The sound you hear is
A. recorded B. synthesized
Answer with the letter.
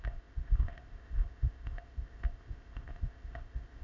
B